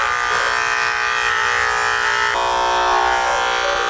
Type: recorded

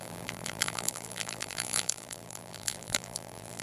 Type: remade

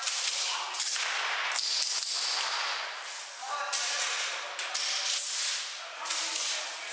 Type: recorded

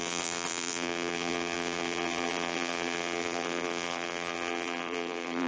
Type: remade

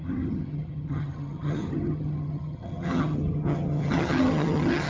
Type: remade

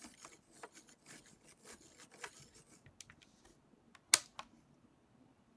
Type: recorded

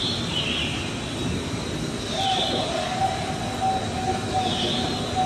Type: recorded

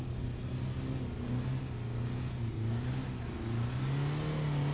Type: recorded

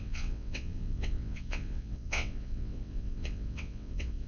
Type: remade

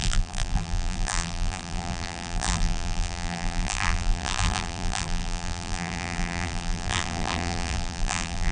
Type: remade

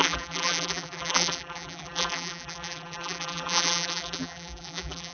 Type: remade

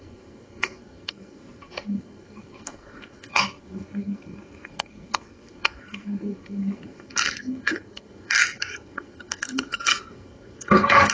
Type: remade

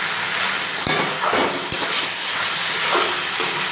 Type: recorded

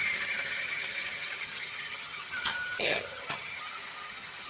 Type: remade